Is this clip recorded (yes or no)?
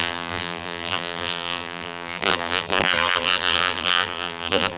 no